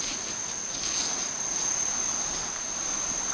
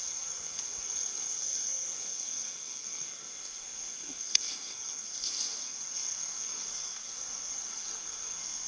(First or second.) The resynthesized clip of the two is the second